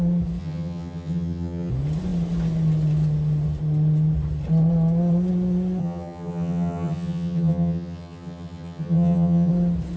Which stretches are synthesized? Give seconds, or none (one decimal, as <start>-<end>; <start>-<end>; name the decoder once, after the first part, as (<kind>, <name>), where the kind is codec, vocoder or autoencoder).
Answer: 0.4-1.7 (vocoder, HiFi-GAN); 5.8-9.5